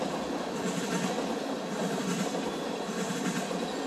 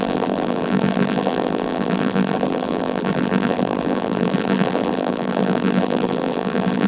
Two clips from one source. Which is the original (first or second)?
first